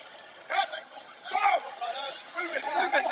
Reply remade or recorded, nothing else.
remade